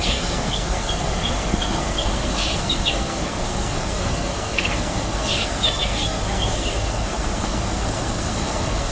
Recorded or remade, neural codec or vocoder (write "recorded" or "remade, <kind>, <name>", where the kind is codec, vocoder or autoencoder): remade, codec, SNAC